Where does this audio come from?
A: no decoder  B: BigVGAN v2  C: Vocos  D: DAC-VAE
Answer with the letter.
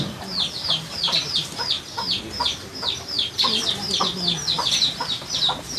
B